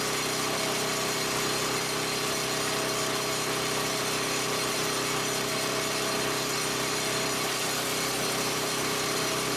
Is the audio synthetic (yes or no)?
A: no